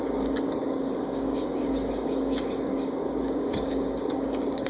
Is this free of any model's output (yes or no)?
no